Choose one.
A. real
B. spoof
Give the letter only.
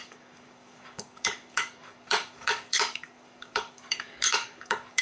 B